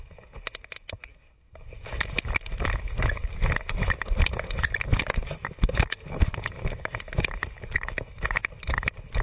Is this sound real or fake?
real